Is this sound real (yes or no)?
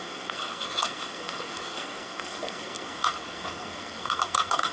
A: no